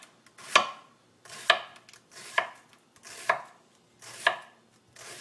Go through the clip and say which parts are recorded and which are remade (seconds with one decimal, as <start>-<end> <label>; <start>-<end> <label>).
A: 0.0-5.2 recorded